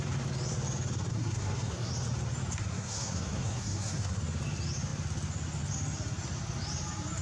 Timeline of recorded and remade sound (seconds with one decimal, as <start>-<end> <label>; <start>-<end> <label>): 0.0-1.1 recorded; 1.1-1.9 remade; 1.9-2.6 recorded; 2.6-4.2 remade; 4.2-7.2 recorded